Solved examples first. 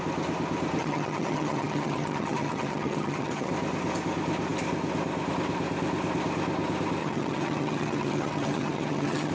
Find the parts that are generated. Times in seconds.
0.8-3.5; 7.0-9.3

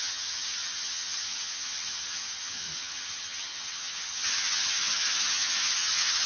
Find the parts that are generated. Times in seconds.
0.0-6.3

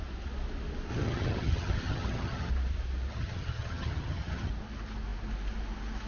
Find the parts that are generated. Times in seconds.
0.9-2.5; 3.1-4.5

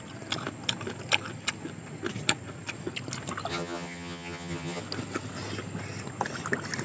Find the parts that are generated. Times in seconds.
3.5-4.8

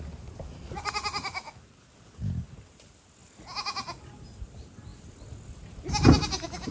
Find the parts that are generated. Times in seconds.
none